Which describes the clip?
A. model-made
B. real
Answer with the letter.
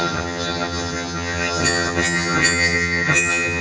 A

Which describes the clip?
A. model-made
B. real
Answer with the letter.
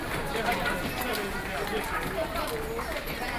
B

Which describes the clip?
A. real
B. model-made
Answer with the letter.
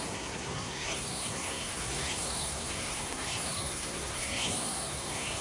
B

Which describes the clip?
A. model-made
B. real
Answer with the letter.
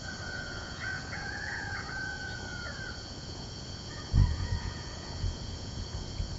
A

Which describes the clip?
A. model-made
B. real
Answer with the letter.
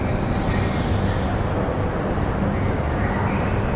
B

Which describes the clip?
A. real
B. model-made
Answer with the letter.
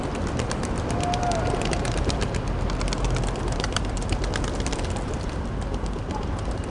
A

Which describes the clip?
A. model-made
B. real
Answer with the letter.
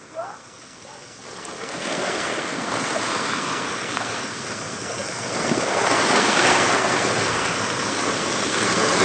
A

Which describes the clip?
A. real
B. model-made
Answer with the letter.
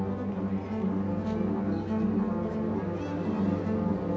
A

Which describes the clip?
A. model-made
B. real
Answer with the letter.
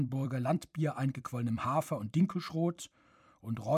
A